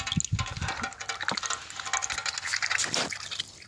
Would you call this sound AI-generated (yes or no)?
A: no